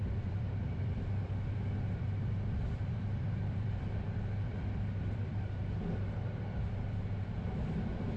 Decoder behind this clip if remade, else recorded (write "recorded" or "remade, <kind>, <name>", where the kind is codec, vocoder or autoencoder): remade, vocoder, BigVGAN v2